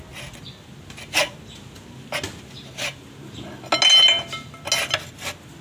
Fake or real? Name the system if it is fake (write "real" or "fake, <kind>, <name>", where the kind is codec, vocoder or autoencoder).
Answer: real